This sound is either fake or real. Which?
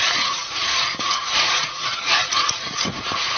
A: fake